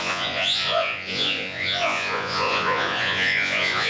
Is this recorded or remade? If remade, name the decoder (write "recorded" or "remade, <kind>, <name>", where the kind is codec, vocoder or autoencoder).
remade, vocoder, Vocos